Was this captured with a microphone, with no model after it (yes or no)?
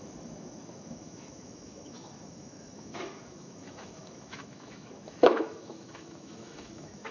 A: no